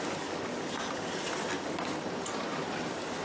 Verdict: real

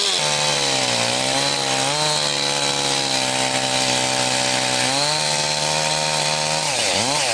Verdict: real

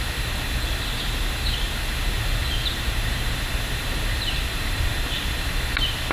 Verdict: real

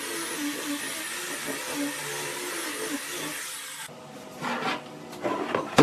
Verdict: real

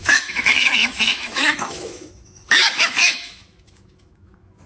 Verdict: fake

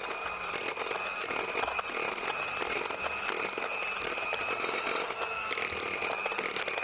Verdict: real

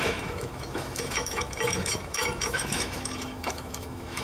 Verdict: fake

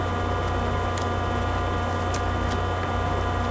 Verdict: real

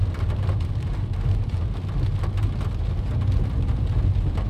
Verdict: real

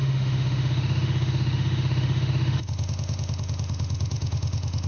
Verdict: fake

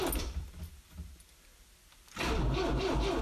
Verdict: real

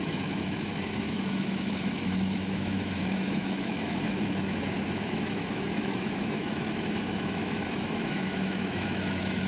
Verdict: fake